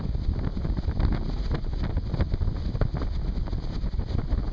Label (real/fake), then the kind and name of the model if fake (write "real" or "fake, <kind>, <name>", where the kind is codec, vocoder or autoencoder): real